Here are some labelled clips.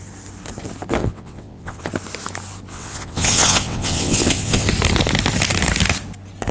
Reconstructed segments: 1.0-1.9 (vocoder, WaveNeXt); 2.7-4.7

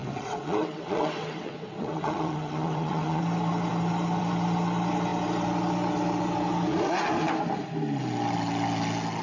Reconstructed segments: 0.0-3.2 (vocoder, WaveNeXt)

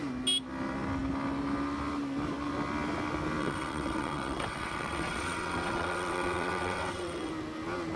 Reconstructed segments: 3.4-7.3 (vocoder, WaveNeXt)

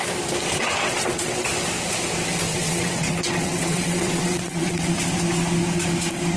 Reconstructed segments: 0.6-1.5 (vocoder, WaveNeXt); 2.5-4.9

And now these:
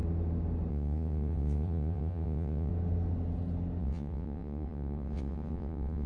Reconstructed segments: 0.7-2.7 (vocoder, WaveNeXt); 3.8-6.1

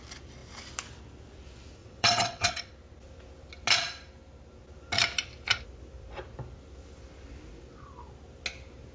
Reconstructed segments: 1.8-2.7 (vocoder, WaveNeXt)